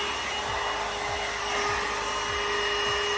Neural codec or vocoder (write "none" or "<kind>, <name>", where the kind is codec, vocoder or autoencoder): none